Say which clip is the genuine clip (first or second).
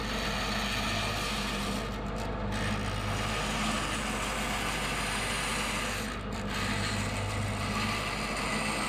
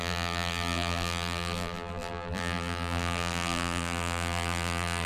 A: first